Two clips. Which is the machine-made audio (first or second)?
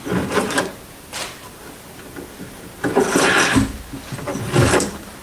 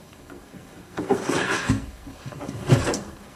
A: second